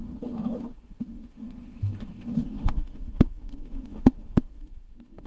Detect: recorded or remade remade